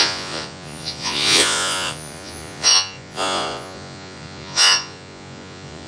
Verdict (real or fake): fake